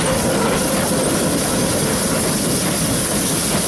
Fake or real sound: real